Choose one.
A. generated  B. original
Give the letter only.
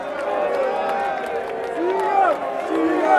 B